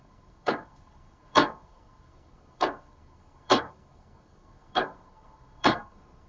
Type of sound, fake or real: fake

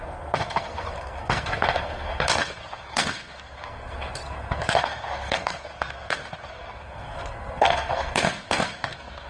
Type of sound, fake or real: fake